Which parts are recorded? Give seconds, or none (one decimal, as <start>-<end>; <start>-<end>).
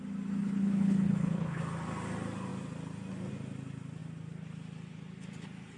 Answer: 0.0-0.4; 1.6-5.8